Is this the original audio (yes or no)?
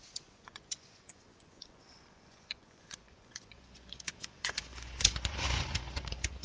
no